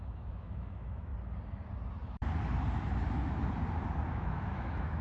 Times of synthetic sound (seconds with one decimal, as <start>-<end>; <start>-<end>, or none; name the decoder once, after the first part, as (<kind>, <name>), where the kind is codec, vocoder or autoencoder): 0.0-1.1 (autoencoder, DAC-VAE); 4.1-5.0